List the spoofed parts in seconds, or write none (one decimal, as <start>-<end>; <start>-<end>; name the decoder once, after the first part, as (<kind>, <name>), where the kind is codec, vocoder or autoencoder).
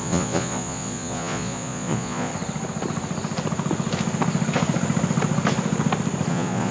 0.0-2.3 (vocoder, Vocos); 6.3-6.7